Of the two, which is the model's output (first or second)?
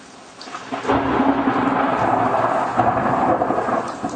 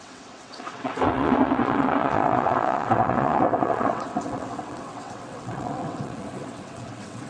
second